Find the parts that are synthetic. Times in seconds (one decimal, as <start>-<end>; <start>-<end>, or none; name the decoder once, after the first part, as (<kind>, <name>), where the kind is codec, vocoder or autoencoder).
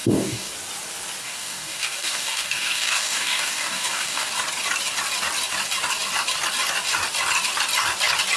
0.0-0.5 (codec, DAC); 1.2-4.3